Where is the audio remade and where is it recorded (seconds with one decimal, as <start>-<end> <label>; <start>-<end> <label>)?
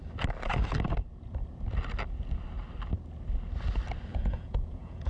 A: 0.0-4.1 recorded; 4.1-5.1 remade